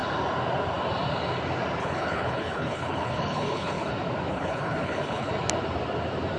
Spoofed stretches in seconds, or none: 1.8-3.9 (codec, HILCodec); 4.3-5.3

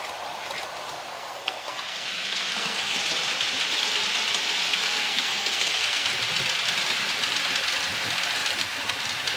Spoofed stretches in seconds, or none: 1.1-3.0 (codec, SNAC); 4.7-6.1

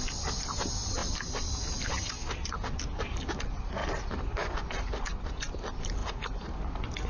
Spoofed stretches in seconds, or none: 1.0-1.9 (vocoder, BigVGAN v2); 3.8-5.0

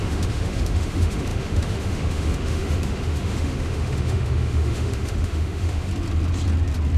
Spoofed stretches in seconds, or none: 0.0-5.9 (autoencoder, DAC-VAE)

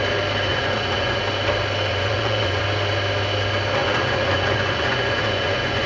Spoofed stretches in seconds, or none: 0.5-1.2 (vocoder, Vocos); 1.9-2.6; 3.8-5.9

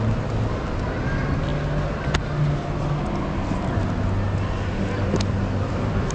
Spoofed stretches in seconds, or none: none

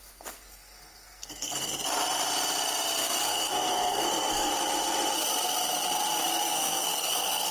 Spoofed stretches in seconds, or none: 0.0-1.7 (codec, SNAC); 3.0-4.5; 6.3-7.5